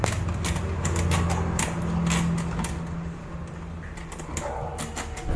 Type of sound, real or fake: real